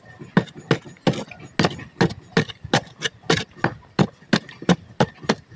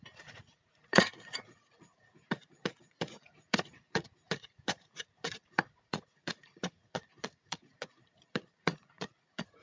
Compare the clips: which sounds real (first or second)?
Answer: first